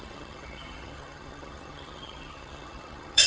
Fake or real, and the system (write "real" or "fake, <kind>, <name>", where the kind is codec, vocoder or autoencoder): fake, vocoder, HiFi-GAN